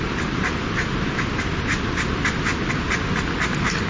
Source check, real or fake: real